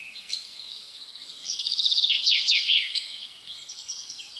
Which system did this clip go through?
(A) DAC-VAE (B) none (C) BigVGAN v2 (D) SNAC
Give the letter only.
D